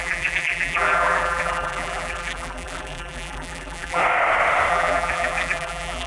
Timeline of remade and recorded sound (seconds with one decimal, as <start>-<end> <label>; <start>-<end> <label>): 0.0-4.0 remade; 4.0-4.7 recorded; 4.7-6.1 remade